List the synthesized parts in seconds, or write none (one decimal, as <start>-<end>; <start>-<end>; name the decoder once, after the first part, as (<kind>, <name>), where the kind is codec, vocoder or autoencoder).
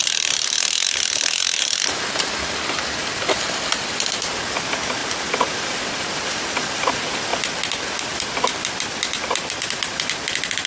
0.0-7.3 (vocoder, BigVGAN v2); 8.0-10.7